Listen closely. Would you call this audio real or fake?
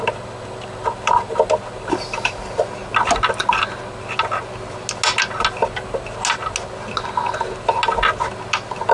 real